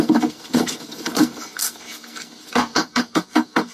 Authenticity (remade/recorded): remade